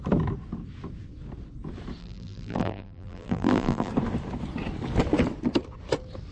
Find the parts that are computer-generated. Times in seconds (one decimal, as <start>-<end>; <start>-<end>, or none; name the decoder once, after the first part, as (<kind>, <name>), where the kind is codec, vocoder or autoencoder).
2.0-3.9 (vocoder, BigVGAN v2)